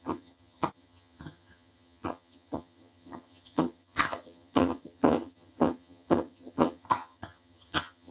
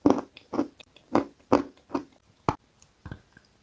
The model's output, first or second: first